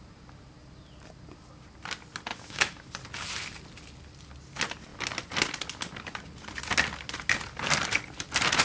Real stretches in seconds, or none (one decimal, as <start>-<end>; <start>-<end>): 0.0-2.3; 2.9-8.6